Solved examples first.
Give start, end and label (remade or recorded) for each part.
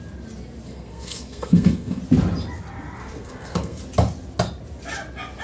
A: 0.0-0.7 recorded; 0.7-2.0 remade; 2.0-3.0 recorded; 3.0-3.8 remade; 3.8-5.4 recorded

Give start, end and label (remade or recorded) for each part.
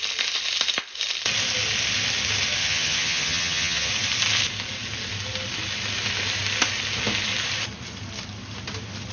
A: 0.0-2.6 recorded; 2.6-3.9 remade; 3.9-9.1 recorded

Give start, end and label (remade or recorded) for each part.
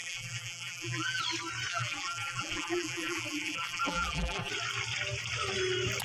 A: 0.0-1.2 remade; 1.2-1.7 recorded; 1.7-4.5 remade; 4.5-6.0 recorded